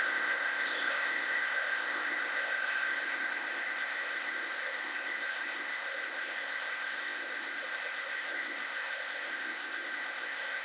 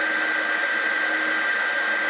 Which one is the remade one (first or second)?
first